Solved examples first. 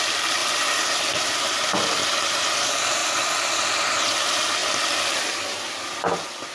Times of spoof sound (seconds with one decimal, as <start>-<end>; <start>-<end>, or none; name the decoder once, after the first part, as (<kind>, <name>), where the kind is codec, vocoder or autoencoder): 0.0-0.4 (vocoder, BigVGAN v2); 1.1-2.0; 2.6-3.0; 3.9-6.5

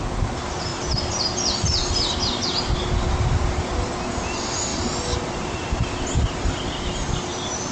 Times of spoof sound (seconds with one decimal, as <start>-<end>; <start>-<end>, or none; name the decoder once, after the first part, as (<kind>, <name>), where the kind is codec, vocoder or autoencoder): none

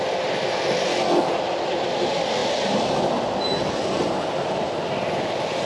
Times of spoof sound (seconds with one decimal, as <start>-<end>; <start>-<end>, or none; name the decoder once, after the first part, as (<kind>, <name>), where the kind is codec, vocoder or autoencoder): none

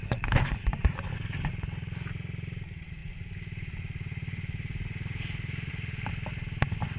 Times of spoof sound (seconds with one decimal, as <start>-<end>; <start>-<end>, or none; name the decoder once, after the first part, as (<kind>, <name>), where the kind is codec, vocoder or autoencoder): 0.0-0.6 (vocoder, BigVGAN v2)